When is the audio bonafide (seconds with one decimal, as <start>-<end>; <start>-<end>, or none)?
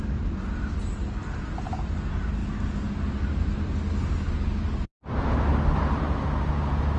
0.0-7.0